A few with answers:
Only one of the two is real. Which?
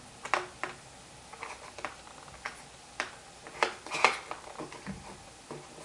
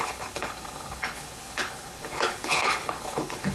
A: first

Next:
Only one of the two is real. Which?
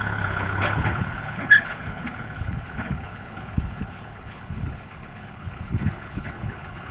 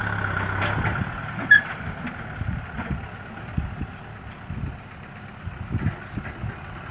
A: second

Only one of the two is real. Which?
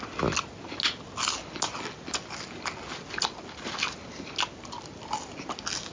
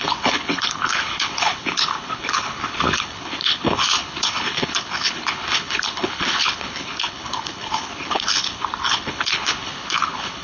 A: first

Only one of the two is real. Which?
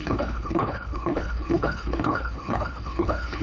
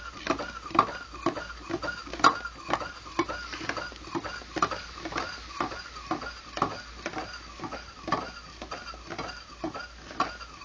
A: second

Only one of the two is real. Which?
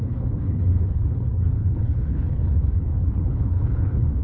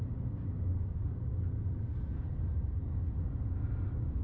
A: second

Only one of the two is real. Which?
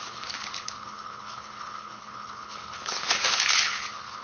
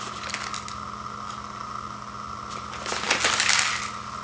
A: second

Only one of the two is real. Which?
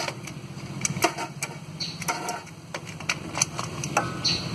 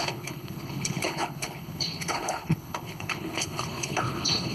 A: first